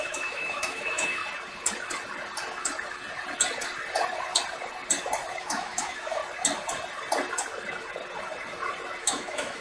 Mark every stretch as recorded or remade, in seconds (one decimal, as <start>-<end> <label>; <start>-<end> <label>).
0.0-1.2 remade; 1.2-5.4 recorded; 5.4-6.2 remade; 6.2-9.0 recorded; 9.0-9.6 remade